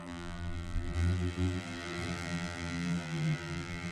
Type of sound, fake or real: fake